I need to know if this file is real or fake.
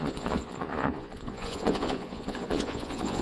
fake